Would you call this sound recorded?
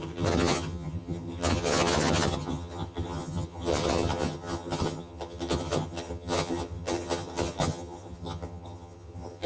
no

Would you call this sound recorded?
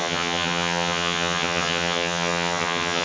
no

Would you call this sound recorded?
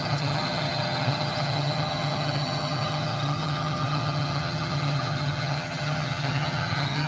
no